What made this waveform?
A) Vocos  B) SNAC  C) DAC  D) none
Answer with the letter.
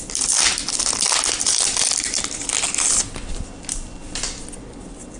D